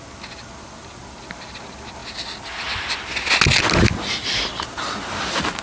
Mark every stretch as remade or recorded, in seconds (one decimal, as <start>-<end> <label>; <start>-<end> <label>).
0.0-5.6 recorded